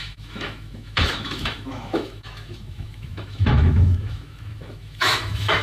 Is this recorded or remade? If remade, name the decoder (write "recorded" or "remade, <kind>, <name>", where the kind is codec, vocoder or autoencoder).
remade, autoencoder, DAC-VAE